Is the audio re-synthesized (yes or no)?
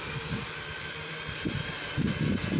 no